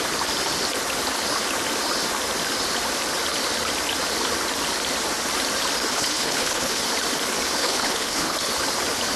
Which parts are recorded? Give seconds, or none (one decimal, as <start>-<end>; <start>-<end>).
0.0-5.9; 6.8-7.6; 8.5-9.2

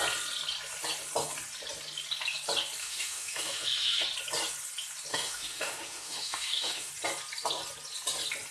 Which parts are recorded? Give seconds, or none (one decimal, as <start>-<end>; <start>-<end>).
0.0-2.8; 4.0-5.1; 6.9-8.5

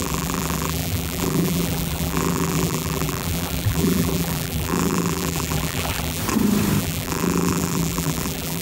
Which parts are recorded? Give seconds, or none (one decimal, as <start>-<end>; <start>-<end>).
6.2-6.8